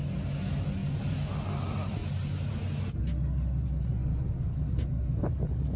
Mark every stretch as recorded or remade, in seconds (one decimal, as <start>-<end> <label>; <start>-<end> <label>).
0.0-5.8 recorded